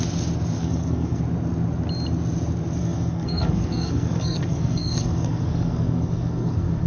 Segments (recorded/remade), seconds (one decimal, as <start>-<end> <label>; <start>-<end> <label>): 0.0-0.6 recorded; 0.6-1.2 remade; 1.2-2.8 recorded; 2.8-6.9 remade